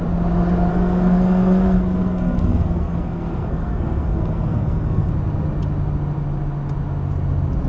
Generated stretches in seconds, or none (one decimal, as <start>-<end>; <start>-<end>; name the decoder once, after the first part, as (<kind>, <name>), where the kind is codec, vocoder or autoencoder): 0.7-5.1 (codec, SNAC)